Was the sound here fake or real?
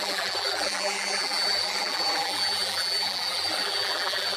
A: fake